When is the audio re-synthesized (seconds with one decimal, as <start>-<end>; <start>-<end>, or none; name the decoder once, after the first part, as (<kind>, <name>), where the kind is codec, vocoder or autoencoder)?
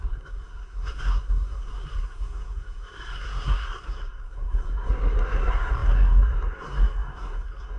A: 0.0-7.8 (codec, SNAC)